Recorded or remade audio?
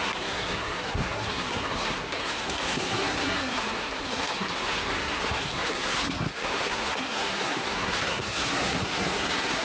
remade